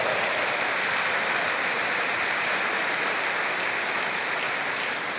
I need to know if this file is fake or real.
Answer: real